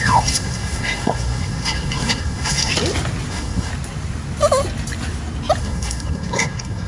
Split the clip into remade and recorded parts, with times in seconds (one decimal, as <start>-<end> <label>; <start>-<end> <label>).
0.0-2.7 remade; 2.7-3.3 recorded; 3.3-3.7 remade; 3.7-5.6 recorded; 5.6-6.9 remade